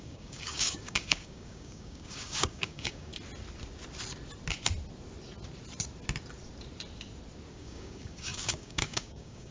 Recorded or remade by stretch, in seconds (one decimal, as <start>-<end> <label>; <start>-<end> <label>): 0.0-3.1 remade; 3.1-7.5 recorded; 7.5-9.5 remade